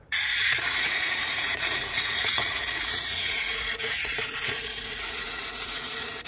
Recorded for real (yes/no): no